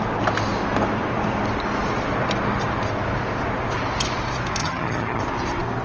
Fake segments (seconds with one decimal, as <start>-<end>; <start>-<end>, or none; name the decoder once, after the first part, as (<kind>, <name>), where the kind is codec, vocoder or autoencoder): 4.6-5.2 (vocoder, HiFi-GAN)